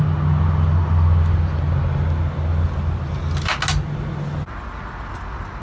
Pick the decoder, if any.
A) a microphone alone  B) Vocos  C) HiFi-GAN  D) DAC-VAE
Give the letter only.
A